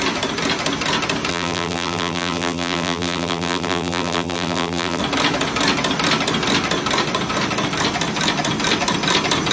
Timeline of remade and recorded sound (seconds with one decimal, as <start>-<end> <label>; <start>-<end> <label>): 0.0-1.3 recorded; 1.3-5.0 remade; 5.0-9.5 recorded